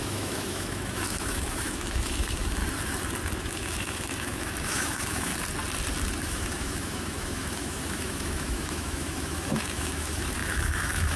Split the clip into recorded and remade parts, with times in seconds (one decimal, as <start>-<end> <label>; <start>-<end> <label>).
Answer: 0.0-2.6 remade; 2.6-3.4 recorded; 3.4-5.3 remade; 5.3-6.2 recorded; 6.2-11.2 remade